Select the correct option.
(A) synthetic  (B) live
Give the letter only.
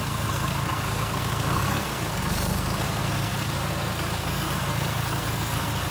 A